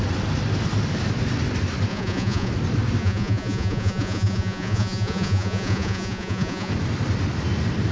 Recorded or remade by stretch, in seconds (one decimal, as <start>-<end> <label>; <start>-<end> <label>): 0.0-1.9 recorded; 1.9-2.5 remade; 2.5-3.0 recorded; 3.0-6.7 remade; 6.7-7.9 recorded